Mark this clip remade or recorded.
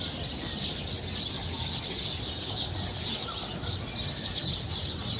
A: recorded